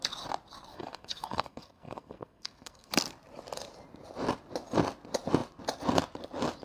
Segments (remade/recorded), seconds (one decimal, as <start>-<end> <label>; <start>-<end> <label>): 0.0-0.7 recorded; 0.7-2.9 remade; 2.9-6.6 recorded